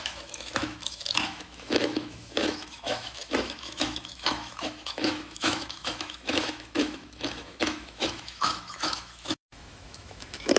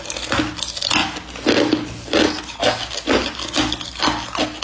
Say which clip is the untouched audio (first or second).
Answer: second